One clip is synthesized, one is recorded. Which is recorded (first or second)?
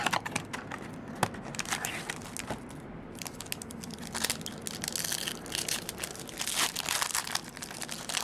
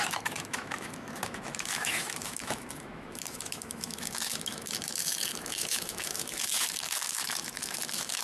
first